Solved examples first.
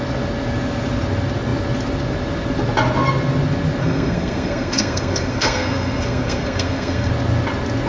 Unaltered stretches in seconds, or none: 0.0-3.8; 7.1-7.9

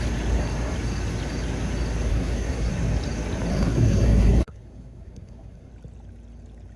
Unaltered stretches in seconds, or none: 0.0-2.1; 2.7-3.5; 5.7-6.8

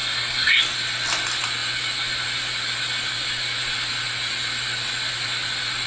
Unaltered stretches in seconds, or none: 0.6-5.9

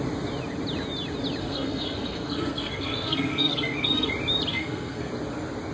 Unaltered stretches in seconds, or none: 0.0-1.4; 4.1-4.5; 5.1-5.7

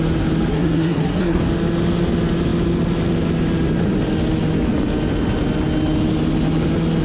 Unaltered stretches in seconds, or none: 0.0-0.5; 1.4-7.0

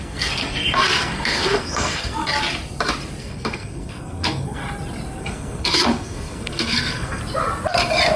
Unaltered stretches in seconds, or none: 2.2-3.2; 4.6-5.2; 7.2-8.2

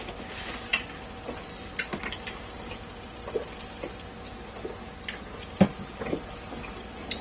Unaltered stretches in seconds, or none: 0.0-7.2